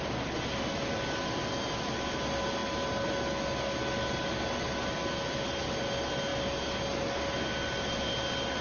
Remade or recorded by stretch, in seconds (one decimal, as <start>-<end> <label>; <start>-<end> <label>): 0.0-8.6 recorded